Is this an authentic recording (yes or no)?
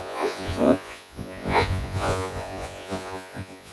no